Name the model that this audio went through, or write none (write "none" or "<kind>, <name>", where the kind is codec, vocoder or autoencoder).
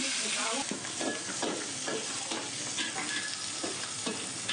none